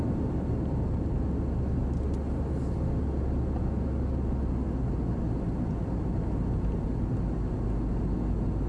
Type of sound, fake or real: real